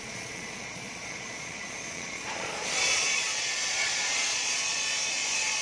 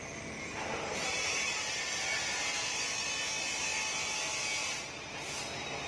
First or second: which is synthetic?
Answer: first